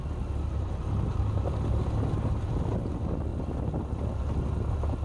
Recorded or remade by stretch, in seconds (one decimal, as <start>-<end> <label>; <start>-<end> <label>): 0.0-5.0 recorded